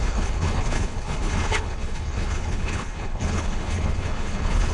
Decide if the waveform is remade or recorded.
remade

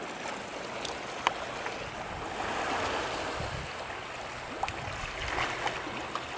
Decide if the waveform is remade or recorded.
recorded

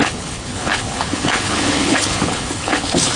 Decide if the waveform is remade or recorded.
remade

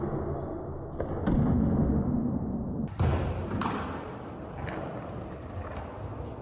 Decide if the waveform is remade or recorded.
recorded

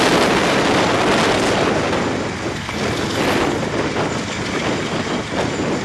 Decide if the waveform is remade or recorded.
recorded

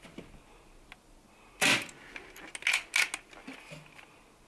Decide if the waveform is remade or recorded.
recorded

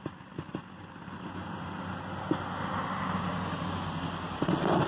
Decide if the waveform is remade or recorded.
recorded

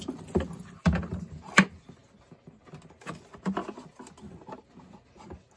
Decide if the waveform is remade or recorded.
recorded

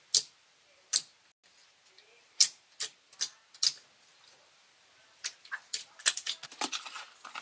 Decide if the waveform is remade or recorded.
recorded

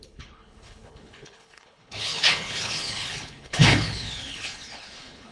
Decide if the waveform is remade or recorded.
remade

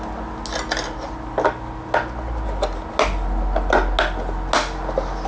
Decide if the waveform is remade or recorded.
recorded